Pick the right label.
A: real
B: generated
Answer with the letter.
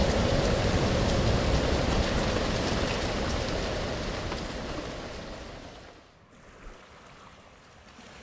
B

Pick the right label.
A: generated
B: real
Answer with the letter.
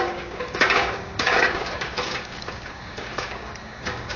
A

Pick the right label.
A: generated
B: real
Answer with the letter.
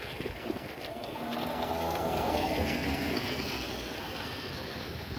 A